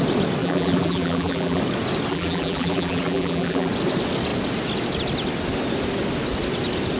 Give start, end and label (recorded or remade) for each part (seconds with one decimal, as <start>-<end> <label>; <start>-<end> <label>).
0.0-0.4 recorded; 0.4-1.6 remade; 1.6-2.1 recorded; 2.1-3.7 remade; 3.7-7.0 recorded